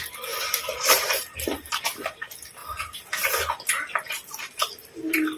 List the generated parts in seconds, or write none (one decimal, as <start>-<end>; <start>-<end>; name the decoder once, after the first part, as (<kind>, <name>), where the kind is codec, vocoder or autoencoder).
0.0-5.4 (vocoder, BigVGAN v2)